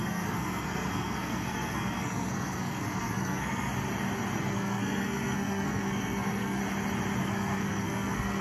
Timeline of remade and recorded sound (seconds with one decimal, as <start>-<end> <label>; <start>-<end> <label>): 0.0-3.7 remade; 3.7-4.4 recorded; 4.4-6.6 remade; 6.6-7.2 recorded; 7.2-8.4 remade